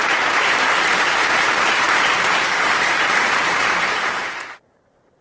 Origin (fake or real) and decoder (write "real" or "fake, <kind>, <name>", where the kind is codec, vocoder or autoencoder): fake, vocoder, BigVGAN v2